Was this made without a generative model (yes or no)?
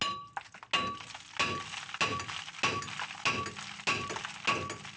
yes